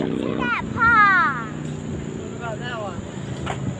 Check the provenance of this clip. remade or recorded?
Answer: recorded